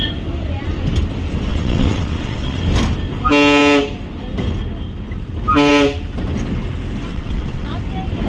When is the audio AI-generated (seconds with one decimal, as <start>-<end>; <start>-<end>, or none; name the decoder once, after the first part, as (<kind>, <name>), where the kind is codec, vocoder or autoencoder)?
1.5-2.6 (vocoder, WaveNeXt); 7.1-7.7

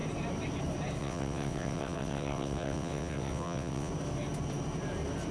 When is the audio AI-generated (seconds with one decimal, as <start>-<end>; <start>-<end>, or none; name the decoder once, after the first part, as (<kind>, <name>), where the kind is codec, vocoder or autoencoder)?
1.0-3.9 (vocoder, WaveNeXt)

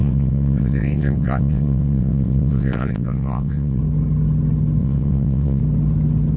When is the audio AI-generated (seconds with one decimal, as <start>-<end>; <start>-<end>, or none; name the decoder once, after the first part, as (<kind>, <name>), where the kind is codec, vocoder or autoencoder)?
0.0-3.8 (vocoder, WaveNeXt); 4.8-5.6

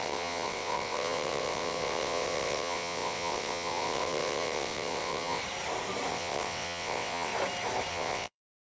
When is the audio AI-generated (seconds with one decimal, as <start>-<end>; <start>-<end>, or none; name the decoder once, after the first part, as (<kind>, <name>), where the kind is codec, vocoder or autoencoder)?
0.0-5.4 (vocoder, WaveNeXt); 6.1-7.3; 7.9-8.7

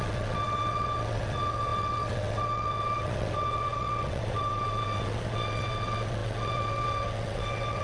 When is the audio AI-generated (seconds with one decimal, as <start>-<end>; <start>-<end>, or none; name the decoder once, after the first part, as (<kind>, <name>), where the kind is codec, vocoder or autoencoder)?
0.0-7.8 (vocoder, WaveNeXt)